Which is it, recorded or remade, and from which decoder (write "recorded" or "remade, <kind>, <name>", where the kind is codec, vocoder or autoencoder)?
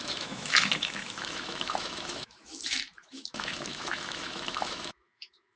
remade, autoencoder, DAC-VAE